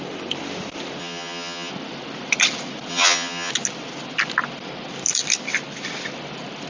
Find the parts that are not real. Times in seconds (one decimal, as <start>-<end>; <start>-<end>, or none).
1.0-1.7; 2.9-3.5